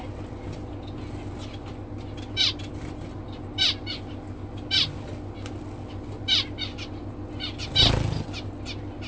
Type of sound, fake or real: real